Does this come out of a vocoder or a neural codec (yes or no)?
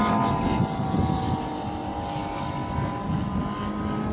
no